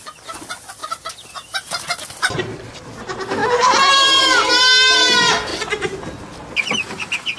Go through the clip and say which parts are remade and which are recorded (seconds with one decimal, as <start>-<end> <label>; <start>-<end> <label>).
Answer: 0.0-7.4 recorded